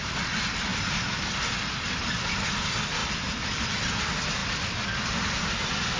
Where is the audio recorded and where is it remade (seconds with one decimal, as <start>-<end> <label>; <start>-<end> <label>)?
0.0-0.7 recorded; 0.7-1.2 remade; 1.2-3.0 recorded; 3.0-4.0 remade; 4.0-6.0 recorded